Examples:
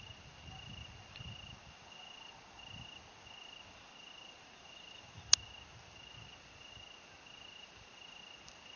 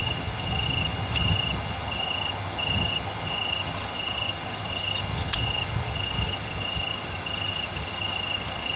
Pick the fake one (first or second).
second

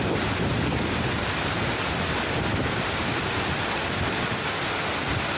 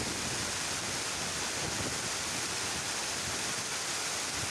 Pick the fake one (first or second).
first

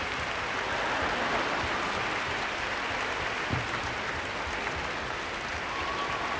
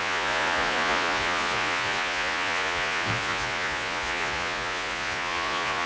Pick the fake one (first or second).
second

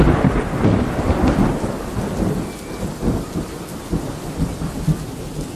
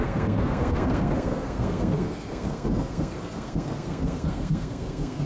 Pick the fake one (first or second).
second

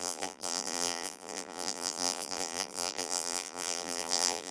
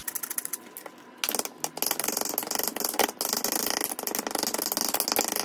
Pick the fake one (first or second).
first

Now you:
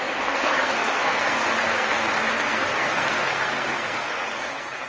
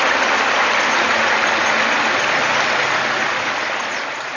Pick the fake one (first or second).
first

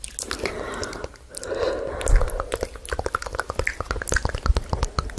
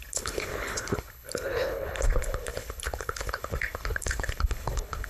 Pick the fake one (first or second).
second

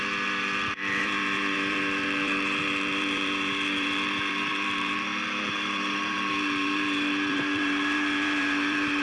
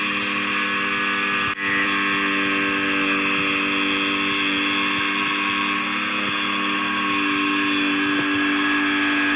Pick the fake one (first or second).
first